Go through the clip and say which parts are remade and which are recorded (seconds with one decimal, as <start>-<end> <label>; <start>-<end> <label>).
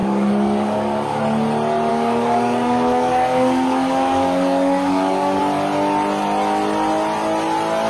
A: 0.0-1.2 remade; 1.2-1.9 recorded; 1.9-5.4 remade; 5.4-7.9 recorded